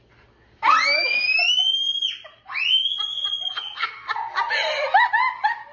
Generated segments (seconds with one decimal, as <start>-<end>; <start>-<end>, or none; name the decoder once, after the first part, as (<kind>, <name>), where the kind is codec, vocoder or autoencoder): none